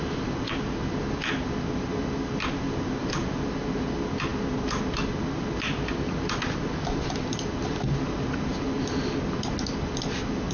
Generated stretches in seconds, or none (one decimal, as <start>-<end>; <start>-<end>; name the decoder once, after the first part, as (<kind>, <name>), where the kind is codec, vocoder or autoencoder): none